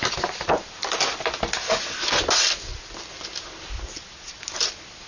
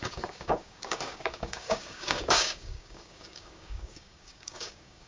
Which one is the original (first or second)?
first